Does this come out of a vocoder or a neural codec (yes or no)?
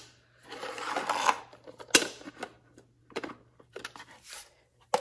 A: no